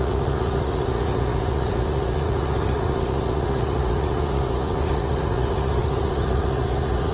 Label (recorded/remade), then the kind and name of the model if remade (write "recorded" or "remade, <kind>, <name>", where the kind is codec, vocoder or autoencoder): remade, vocoder, Vocos